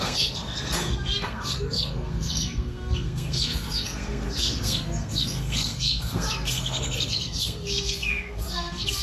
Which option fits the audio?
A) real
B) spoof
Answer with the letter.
B